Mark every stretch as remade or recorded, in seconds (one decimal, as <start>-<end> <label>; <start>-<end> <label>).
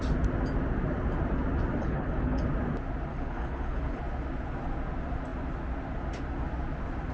0.0-1.8 recorded; 1.8-2.4 remade; 2.4-3.1 recorded; 3.1-4.0 remade; 4.0-7.1 recorded